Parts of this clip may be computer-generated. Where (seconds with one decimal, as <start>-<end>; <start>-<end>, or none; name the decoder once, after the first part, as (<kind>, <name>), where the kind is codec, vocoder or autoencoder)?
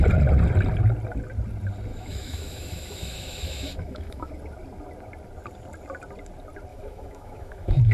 1.9-4.3 (autoencoder, DAC-VAE); 6.7-7.9